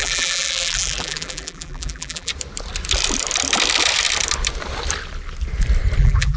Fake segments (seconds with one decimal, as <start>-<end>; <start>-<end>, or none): 0.0-2.3; 6.0-6.4